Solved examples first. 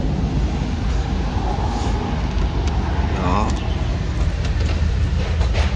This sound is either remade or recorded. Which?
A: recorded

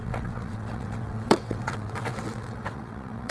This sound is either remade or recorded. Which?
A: remade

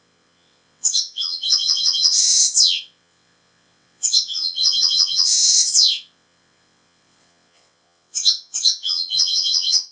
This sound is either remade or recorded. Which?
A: remade